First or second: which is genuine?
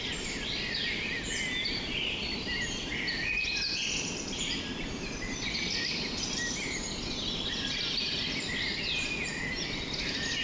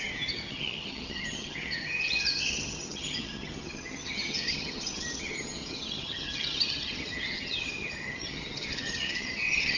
first